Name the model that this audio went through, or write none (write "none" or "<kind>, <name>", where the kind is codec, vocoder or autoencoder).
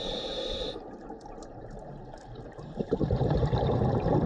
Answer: vocoder, BigVGAN v2